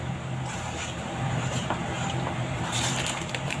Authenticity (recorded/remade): remade